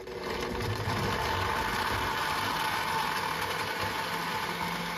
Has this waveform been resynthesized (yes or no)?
no